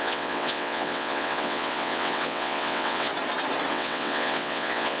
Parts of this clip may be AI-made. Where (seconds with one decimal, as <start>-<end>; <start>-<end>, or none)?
0.0-3.1; 3.7-5.0